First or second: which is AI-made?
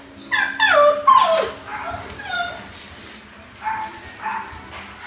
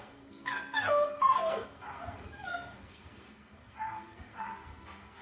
second